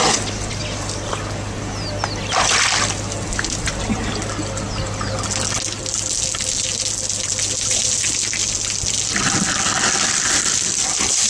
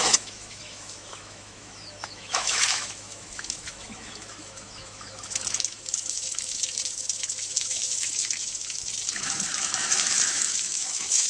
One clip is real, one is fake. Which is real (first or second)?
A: first